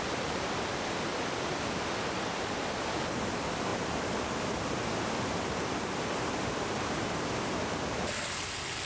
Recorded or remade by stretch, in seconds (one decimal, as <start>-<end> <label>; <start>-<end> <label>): 0.0-8.9 remade